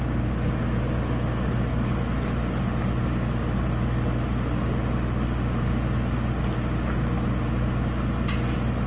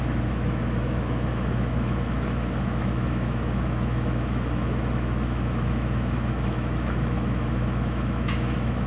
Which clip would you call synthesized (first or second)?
second